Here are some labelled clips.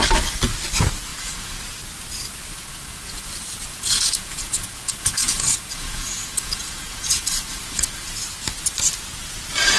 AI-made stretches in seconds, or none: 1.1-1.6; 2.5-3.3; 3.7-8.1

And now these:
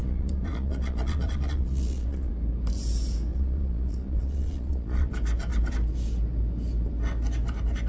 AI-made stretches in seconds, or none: 0.0-2.3; 3.3-5.1